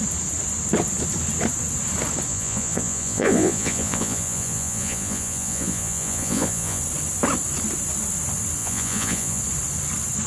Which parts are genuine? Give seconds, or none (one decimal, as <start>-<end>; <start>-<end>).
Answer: 0.0-2.3; 6.8-8.6; 9.4-10.3